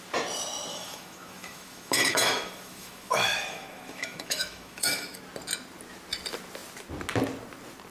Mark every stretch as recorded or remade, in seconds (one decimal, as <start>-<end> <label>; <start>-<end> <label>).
0.0-0.7 recorded; 0.7-5.2 remade; 5.2-7.9 recorded